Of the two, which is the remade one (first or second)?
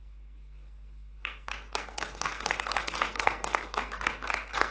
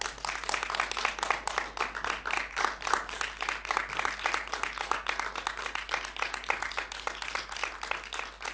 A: first